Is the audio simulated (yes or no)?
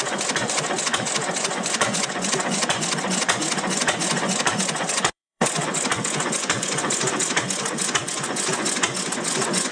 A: yes